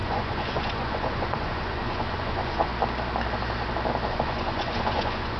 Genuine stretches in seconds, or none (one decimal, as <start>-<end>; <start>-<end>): 2.7-4.1